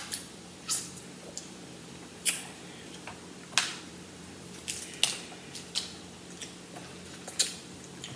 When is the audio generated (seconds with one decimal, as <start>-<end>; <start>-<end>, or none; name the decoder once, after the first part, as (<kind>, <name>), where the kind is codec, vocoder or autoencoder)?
0.0-3.1 (vocoder, BigVGAN v2); 3.7-4.8